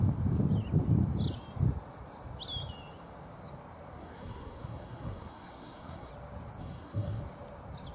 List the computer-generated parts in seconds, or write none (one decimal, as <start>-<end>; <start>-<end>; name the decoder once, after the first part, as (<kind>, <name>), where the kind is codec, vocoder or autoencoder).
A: 4.0-6.1 (codec, SNAC); 6.6-7.2

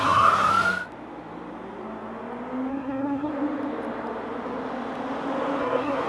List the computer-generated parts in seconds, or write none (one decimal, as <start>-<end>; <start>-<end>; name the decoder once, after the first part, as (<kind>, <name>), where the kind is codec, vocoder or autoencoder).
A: 0.0-0.5 (codec, SNAC); 2.7-3.3; 5.6-6.1

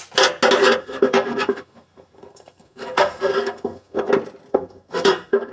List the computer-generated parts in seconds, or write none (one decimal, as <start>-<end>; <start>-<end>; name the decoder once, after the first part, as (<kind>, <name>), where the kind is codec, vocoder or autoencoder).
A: 0.8-4.1 (codec, SNAC); 4.5-5.5

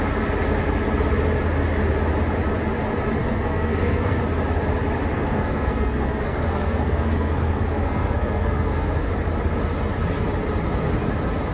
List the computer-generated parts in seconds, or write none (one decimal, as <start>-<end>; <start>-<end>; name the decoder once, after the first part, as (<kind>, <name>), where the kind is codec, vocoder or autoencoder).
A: 3.2-4.2 (codec, SNAC); 5.1-9.1

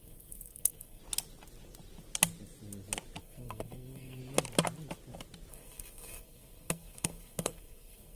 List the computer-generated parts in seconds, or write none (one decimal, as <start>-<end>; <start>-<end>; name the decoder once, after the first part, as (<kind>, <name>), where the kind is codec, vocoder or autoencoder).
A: 0.0-1.0 (codec, SNAC); 3.2-4.2; 5.5-8.2

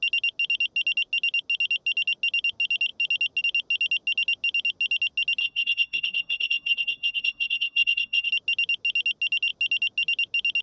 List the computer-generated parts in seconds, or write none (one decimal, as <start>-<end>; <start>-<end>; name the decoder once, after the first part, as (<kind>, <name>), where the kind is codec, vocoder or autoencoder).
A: 5.4-8.3 (codec, SNAC)

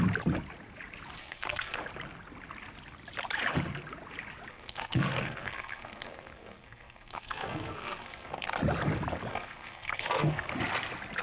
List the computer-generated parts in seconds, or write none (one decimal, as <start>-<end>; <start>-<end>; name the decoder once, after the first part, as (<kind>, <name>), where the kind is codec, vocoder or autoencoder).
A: 1.2-1.8 (codec, SNAC); 4.5-8.6; 9.3-10.5

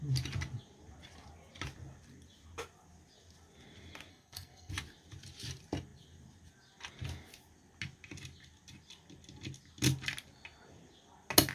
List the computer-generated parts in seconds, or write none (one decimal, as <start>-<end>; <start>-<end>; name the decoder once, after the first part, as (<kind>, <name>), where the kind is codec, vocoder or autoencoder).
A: 4.1-4.7 (codec, SNAC)